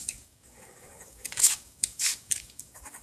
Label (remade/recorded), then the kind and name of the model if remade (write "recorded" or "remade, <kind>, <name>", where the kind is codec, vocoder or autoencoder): remade, codec, DAC